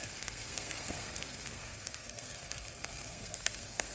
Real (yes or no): no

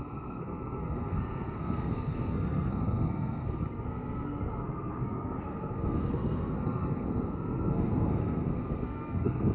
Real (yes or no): no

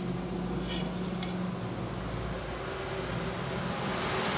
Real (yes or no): yes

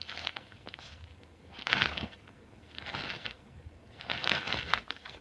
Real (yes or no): no